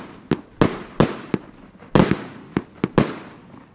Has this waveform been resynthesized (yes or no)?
no